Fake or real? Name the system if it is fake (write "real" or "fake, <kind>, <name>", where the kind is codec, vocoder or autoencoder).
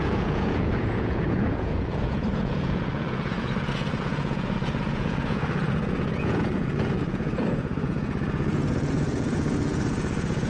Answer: fake, vocoder, Vocos